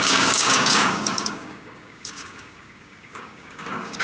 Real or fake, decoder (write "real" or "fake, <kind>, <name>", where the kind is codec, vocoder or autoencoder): fake, codec, DAC